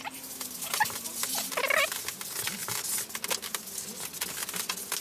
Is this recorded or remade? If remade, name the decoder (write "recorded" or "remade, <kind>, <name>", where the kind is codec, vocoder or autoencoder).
recorded